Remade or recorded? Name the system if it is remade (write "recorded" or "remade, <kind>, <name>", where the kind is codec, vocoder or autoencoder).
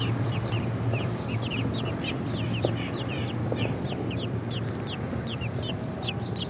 remade, vocoder, BigVGAN v2